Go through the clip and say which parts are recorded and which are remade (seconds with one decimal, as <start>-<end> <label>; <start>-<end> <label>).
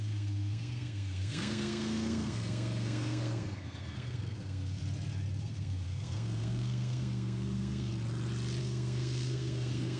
0.0-4.8 remade; 4.8-5.4 recorded; 5.4-7.9 remade; 7.9-8.6 recorded; 8.6-10.0 remade